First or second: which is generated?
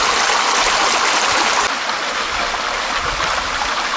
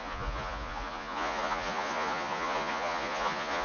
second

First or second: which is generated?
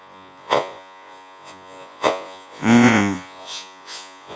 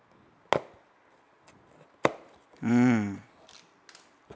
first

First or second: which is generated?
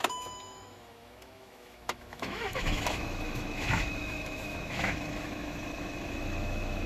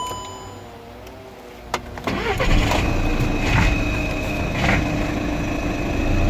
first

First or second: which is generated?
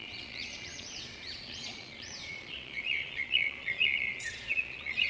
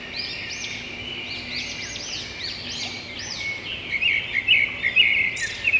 first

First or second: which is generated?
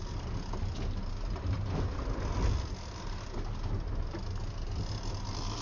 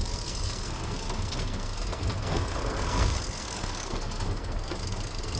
second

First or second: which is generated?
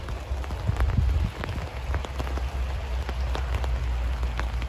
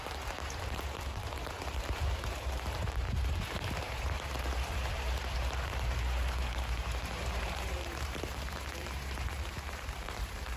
second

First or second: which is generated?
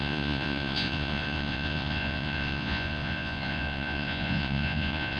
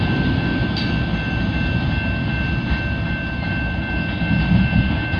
first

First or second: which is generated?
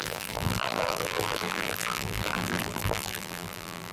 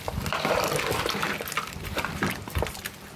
first